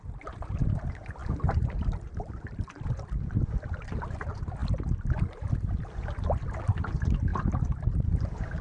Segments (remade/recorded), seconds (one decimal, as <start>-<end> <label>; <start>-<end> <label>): 0.0-8.6 recorded